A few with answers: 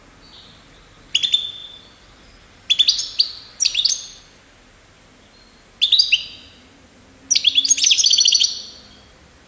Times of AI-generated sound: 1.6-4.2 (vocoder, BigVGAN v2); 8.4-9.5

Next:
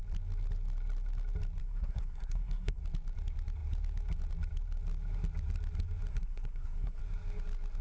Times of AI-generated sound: 1.6-2.8 (codec, SNAC); 6.1-7.0